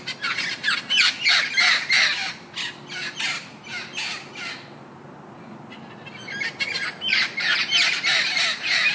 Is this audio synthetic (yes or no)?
no